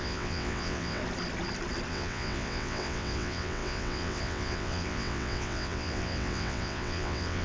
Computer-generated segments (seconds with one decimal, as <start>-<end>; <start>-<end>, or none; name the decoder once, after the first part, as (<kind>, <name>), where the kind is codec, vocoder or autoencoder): 0.0-1.0 (vocoder, WaveNeXt); 1.9-7.4